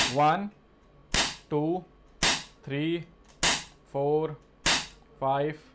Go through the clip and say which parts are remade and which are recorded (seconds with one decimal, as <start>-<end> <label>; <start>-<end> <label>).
0.0-5.7 recorded